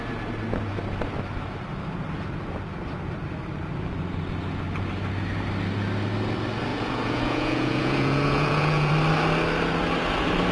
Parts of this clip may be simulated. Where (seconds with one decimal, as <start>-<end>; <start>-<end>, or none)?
6.7-8.9